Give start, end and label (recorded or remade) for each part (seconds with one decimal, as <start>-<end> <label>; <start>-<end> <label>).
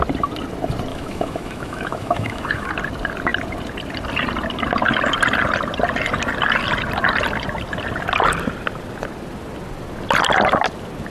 0.0-0.9 recorded; 0.9-2.7 remade; 2.7-11.1 recorded